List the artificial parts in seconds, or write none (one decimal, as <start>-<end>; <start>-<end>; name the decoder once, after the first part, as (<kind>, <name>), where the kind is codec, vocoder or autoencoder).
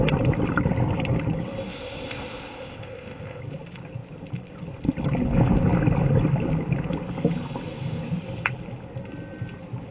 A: 1.7-3.4 (codec, ZipCodec)